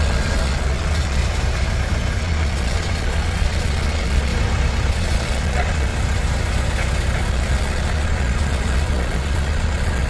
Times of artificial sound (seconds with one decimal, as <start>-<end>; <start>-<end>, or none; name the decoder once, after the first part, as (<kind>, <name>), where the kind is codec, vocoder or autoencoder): 0.0-1.2 (vocoder, Vocos); 2.2-4.3; 4.9-5.9; 7.3-10.1